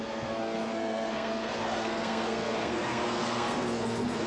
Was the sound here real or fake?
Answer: fake